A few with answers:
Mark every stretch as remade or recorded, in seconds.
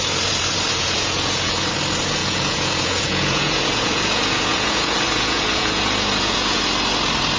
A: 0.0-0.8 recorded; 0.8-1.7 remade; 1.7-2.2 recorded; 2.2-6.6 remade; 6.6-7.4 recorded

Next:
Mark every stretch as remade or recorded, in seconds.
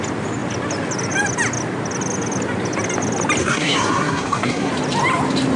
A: 0.0-3.4 recorded; 3.4-4.7 remade; 4.7-5.6 recorded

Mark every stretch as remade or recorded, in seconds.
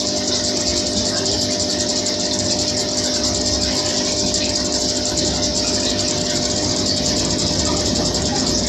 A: 0.0-8.7 recorded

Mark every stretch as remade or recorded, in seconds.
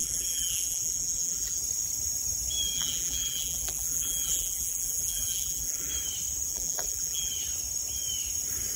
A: 0.0-1.6 remade; 1.6-2.7 recorded; 2.7-5.9 remade; 5.9-6.5 recorded; 6.5-7.3 remade; 7.3-8.8 recorded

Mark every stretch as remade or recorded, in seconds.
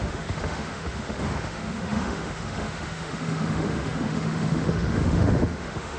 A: 0.0-6.0 remade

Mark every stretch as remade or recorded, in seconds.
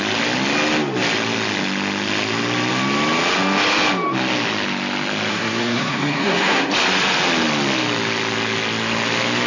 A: 0.0-5.3 recorded; 5.3-6.7 remade; 6.7-9.5 recorded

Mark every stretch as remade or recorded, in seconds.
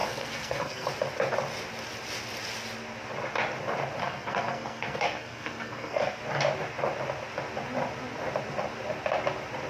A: 0.0-0.9 remade; 0.9-4.0 recorded; 4.0-6.2 remade; 6.2-9.7 recorded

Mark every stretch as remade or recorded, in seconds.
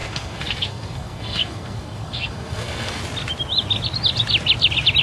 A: 0.0-3.0 remade; 3.0-5.0 recorded